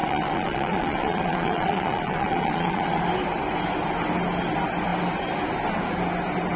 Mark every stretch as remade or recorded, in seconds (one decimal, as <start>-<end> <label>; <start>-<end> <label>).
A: 0.0-3.0 remade; 3.0-6.6 recorded